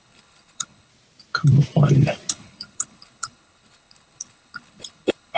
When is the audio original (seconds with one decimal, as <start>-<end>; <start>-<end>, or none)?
0.9-2.3